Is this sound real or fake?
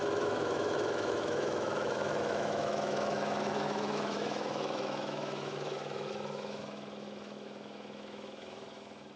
fake